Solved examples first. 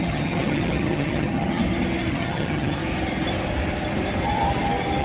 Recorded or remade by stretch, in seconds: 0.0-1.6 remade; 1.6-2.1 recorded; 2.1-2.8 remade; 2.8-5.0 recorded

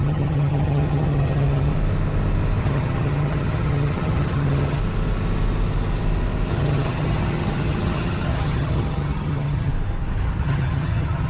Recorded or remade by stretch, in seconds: 0.0-1.7 remade; 1.7-2.6 recorded; 2.6-4.8 remade; 4.8-6.5 recorded; 6.5-9.7 remade; 9.7-10.4 recorded; 10.4-11.3 remade

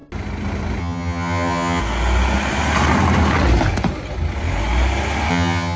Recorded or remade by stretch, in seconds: 0.0-0.8 recorded; 0.8-1.8 remade; 1.8-5.3 recorded; 5.3-5.8 remade

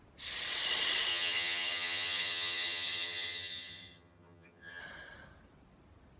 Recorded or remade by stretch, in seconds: 0.0-1.1 recorded; 1.1-4.8 remade; 4.8-6.2 recorded

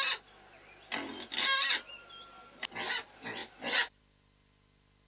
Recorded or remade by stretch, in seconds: 0.0-5.1 recorded

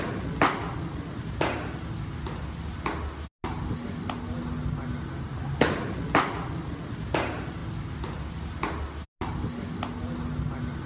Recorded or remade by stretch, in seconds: 0.0-10.9 recorded